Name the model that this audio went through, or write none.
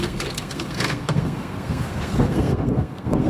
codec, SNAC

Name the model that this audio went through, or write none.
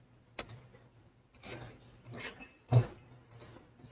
vocoder, BigVGAN v2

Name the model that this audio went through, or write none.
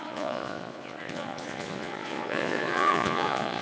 vocoder, Vocos